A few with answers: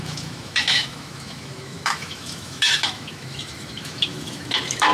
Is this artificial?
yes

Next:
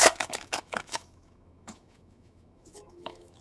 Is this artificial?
yes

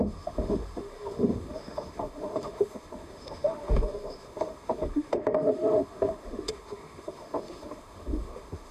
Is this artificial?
yes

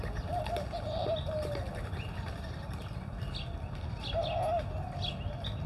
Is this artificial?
no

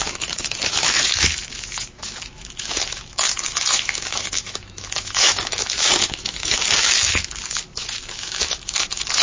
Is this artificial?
yes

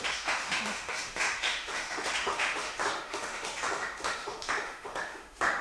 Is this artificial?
yes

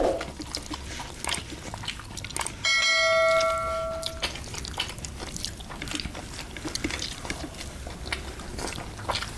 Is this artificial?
no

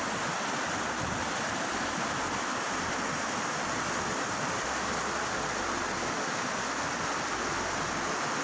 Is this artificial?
no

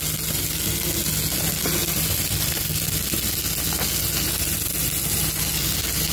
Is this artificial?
no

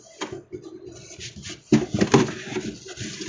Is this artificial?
no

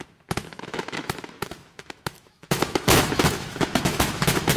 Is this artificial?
yes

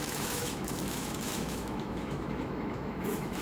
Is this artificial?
yes